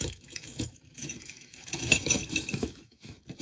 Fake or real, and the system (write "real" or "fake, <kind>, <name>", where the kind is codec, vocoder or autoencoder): fake, autoencoder, DAC-VAE